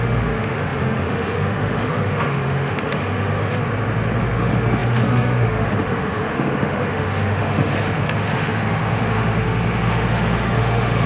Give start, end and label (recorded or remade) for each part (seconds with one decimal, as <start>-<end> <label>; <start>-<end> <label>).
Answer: 0.0-3.6 remade; 3.6-4.2 recorded; 4.2-11.1 remade